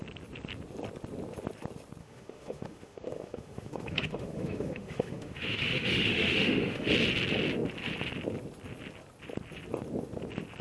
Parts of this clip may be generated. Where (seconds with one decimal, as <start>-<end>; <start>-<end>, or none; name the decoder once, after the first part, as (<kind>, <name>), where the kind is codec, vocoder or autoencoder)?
2.0-6.9 (autoencoder, DAC-VAE)